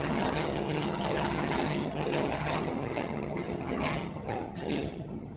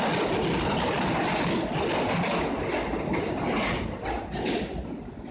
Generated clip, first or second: first